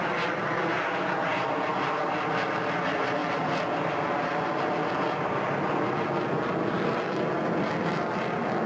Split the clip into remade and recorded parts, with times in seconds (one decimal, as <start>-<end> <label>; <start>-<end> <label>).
0.0-8.7 recorded